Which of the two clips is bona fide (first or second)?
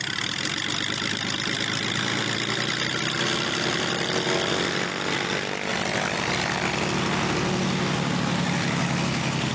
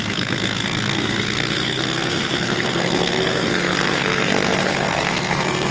first